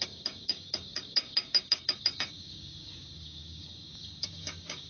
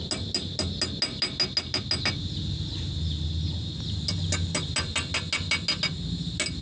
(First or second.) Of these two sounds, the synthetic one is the first